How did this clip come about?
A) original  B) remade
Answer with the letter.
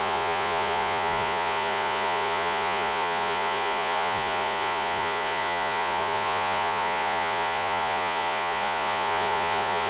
B